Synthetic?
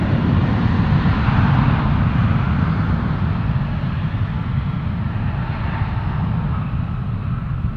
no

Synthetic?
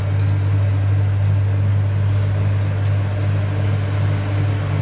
no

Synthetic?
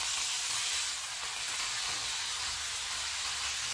no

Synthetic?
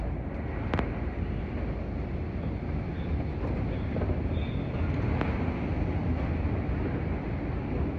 no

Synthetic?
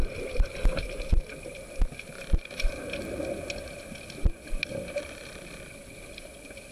no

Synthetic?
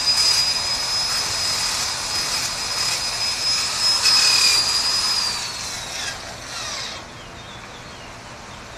no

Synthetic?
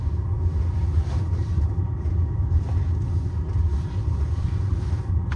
no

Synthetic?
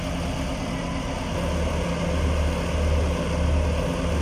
no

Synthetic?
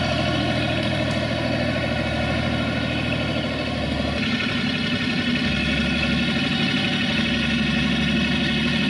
no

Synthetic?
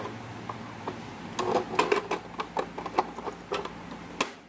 no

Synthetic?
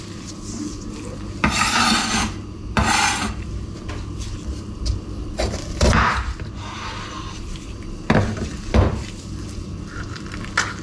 yes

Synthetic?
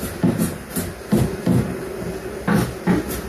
no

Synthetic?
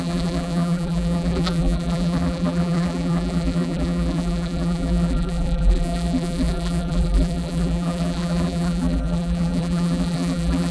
yes